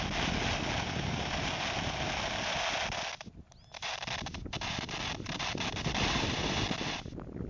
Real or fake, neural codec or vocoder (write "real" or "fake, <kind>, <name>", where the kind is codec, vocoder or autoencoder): real